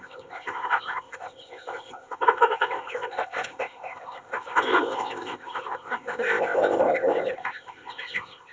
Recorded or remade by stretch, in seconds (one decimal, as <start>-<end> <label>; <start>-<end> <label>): 0.0-8.5 remade